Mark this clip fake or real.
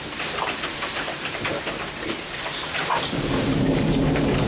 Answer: fake